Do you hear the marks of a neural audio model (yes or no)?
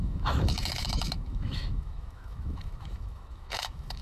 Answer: yes